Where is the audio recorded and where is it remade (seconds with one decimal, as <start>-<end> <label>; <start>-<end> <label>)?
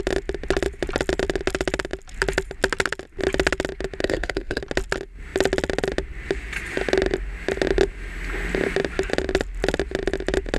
0.0-4.0 recorded; 4.0-4.6 remade; 4.6-10.6 recorded